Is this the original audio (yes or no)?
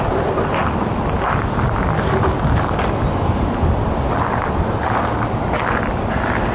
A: yes